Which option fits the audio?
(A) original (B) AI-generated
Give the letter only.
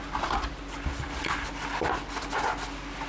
A